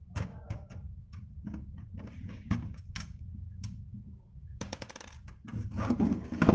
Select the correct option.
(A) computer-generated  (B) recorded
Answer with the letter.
A